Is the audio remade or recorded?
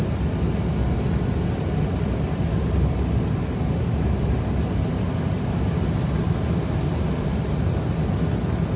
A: recorded